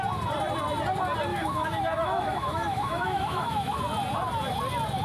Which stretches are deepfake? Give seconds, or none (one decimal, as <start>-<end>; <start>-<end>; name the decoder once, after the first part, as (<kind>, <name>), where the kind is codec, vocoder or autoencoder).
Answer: 1.3-3.8 (autoencoder, DAC-VAE)